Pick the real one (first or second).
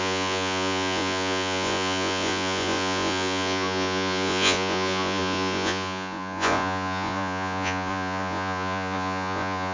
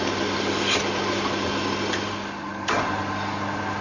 second